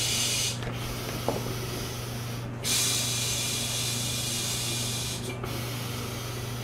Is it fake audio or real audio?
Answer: real